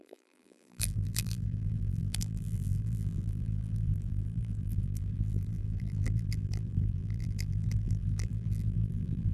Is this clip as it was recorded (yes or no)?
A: no